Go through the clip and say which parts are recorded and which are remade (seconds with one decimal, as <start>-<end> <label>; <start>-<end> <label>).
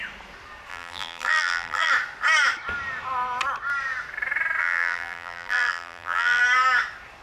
0.0-0.7 recorded; 0.7-1.9 remade; 1.9-4.6 recorded; 4.6-6.4 remade; 6.4-7.2 recorded